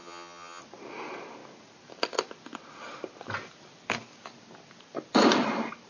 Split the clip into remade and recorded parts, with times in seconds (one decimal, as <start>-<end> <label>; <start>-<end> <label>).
0.0-0.6 remade; 0.6-5.9 recorded